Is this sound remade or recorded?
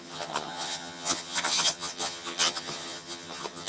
remade